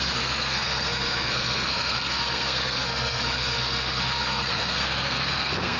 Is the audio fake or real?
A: fake